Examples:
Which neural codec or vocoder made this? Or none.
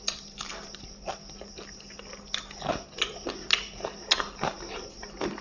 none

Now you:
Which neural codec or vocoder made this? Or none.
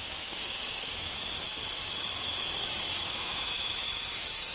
autoencoder, DAC-VAE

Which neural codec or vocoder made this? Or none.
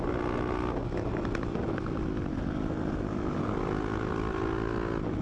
none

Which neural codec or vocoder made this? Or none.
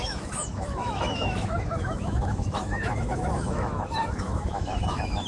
autoencoder, DAC-VAE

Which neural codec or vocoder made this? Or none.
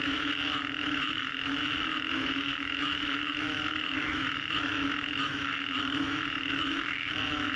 autoencoder, DAC-VAE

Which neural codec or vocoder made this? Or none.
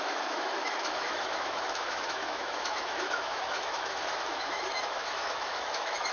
autoencoder, DAC-VAE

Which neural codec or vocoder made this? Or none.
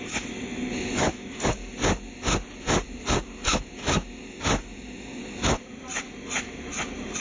none